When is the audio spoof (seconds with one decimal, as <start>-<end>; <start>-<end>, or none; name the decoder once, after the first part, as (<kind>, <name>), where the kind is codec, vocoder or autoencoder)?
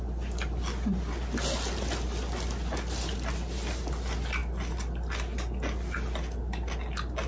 none